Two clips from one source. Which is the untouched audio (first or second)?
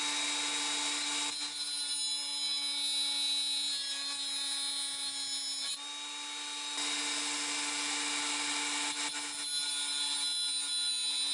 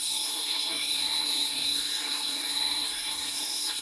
first